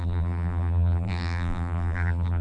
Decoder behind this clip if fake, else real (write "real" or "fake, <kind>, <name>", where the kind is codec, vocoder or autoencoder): fake, vocoder, BigVGAN v2